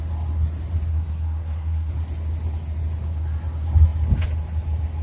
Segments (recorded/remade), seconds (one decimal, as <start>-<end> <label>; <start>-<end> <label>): 0.0-0.9 recorded; 0.9-1.9 remade; 1.9-5.0 recorded